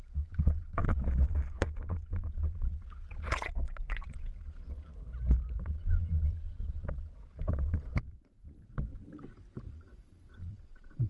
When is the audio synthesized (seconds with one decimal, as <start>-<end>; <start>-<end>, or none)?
0.0-4.9; 5.6-8.9; 9.7-11.1